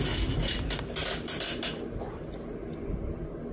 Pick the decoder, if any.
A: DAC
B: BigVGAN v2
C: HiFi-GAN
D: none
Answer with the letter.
D